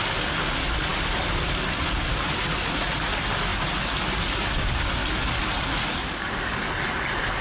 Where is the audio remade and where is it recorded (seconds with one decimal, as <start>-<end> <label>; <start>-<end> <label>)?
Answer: 0.0-6.1 recorded; 6.1-6.7 remade; 6.7-7.4 recorded